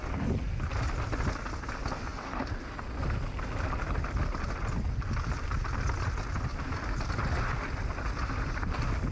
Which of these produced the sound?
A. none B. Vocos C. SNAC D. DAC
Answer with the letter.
A